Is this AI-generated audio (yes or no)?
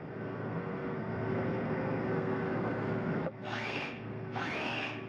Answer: yes